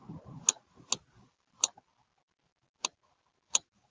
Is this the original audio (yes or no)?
yes